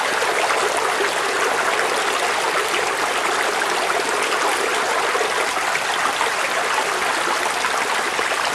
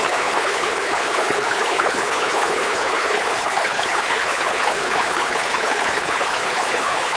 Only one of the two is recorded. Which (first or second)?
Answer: first